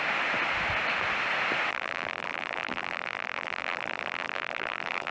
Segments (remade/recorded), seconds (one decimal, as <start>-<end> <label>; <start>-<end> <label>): 0.0-1.7 recorded; 1.7-5.1 remade